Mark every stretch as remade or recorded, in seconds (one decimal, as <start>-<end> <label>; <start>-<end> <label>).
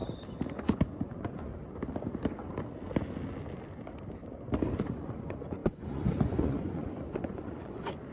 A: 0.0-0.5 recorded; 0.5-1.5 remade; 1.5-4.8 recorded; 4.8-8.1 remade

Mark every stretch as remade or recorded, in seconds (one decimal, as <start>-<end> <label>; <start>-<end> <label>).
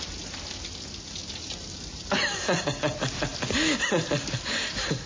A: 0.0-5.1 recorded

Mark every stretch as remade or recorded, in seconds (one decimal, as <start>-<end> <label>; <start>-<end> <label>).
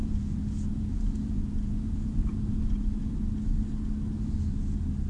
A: 0.0-3.1 remade; 3.1-5.1 recorded